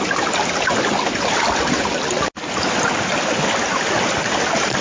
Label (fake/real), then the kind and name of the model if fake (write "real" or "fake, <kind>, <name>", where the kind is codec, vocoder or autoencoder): real